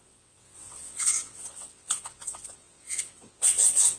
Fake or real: fake